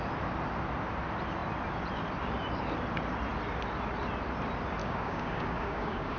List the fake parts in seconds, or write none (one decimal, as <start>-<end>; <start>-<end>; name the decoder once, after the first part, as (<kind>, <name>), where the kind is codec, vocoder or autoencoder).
4.8-6.2 (codec, DAC)